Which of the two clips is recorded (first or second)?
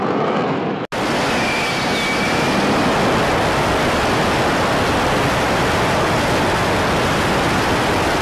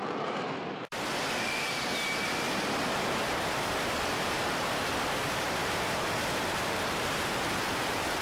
first